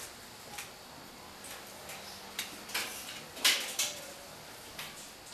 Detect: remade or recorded recorded